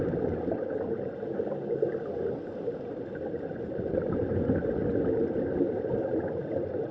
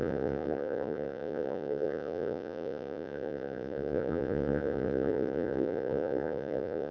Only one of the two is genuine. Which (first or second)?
first